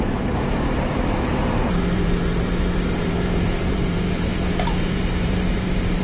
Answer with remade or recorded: remade